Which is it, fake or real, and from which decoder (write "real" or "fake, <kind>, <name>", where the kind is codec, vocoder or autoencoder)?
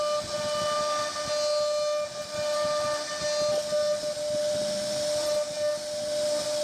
real